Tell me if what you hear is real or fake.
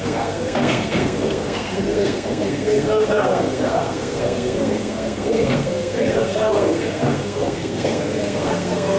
fake